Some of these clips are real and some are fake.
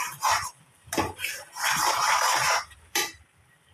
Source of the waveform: fake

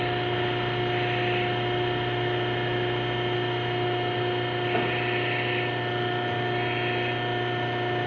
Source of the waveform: real